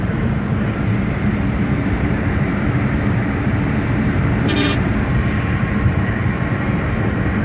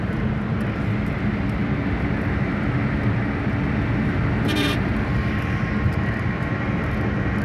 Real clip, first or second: second